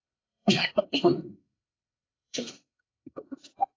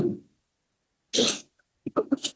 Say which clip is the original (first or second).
second